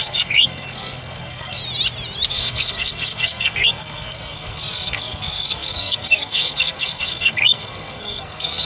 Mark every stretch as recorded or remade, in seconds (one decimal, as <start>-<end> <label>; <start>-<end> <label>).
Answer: 0.0-1.6 remade; 1.6-2.3 recorded; 2.3-8.7 remade